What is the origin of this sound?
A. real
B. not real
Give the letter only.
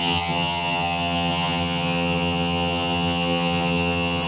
B